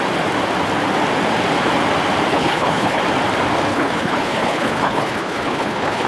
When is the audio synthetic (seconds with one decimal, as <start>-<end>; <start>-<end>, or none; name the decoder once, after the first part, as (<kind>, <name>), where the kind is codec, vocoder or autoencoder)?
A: 2.3-3.0 (codec, HILCodec); 3.7-6.1